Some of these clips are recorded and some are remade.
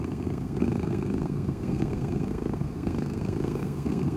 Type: remade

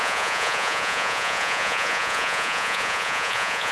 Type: remade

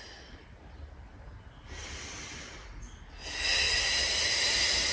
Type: recorded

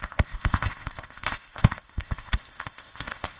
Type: remade